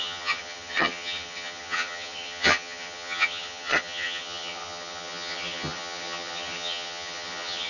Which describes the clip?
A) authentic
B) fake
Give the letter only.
B